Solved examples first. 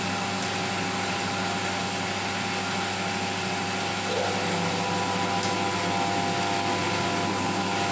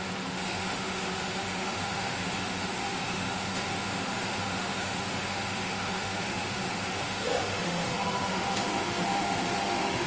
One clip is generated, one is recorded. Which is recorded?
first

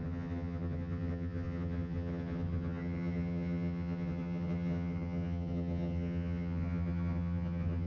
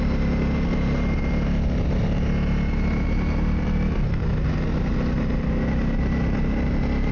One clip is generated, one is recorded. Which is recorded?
second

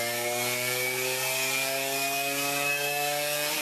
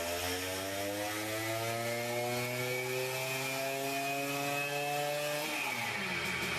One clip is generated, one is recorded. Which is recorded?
second